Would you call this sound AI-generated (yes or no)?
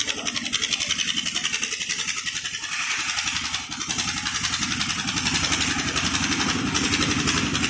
no